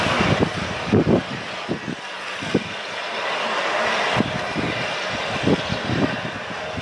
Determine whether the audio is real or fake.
real